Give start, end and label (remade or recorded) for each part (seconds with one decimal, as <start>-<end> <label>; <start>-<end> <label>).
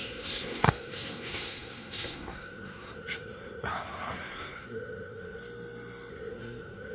0.0-5.4 remade; 5.4-6.1 recorded; 6.1-6.9 remade